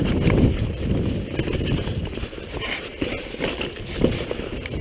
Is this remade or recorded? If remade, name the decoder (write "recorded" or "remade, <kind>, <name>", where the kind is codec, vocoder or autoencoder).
recorded